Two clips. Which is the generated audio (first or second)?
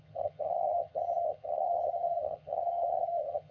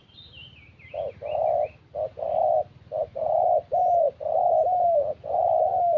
first